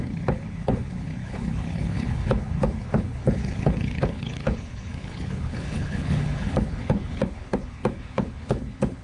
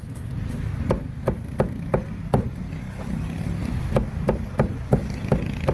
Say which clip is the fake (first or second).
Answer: first